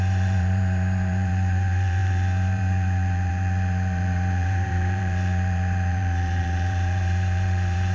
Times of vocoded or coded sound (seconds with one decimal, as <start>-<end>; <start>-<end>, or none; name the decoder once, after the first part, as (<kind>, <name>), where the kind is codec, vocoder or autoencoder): 0.0-7.9 (vocoder, BigVGAN v2)